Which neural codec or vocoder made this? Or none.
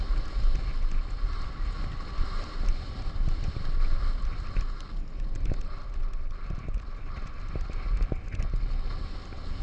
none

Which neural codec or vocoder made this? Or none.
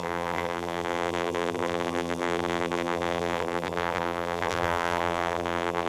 vocoder, BigVGAN v2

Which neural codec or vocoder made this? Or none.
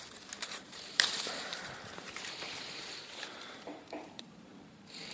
vocoder, BigVGAN v2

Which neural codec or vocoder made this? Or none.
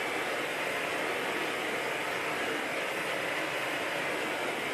vocoder, BigVGAN v2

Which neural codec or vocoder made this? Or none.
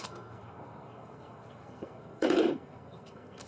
codec, SNAC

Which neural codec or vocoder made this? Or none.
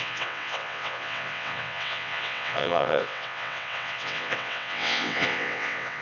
vocoder, WaveNeXt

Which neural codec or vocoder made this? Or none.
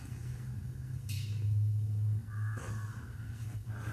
codec, SNAC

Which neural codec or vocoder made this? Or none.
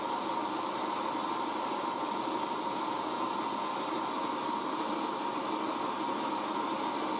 none